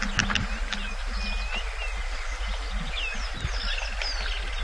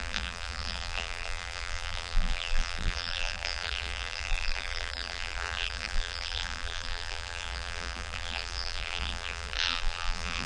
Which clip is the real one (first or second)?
first